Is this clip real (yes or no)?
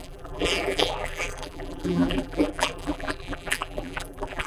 no